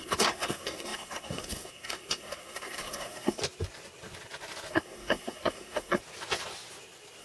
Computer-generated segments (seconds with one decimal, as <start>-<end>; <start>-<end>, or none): 0.0-3.4; 4.7-6.0